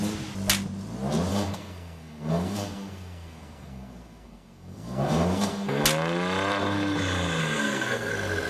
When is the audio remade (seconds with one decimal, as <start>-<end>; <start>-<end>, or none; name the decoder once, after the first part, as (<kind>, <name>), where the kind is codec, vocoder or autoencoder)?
1.3-5.8 (codec, SNAC); 7.4-8.1